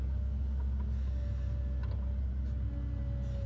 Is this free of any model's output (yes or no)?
yes